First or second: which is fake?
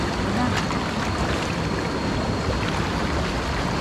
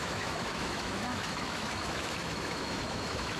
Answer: second